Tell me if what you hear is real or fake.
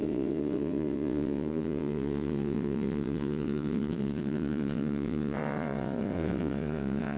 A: fake